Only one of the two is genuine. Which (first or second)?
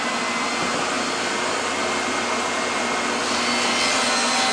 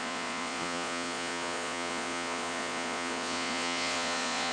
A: first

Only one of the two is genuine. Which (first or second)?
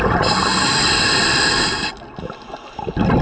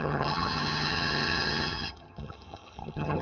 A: first